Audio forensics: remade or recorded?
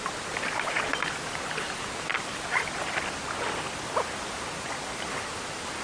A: recorded